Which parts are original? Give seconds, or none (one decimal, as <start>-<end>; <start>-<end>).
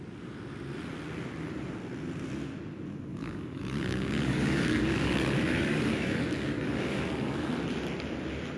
0.0-3.1; 7.5-8.6